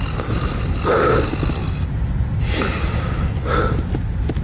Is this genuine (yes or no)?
yes